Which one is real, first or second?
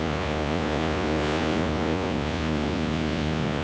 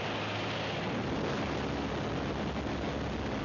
second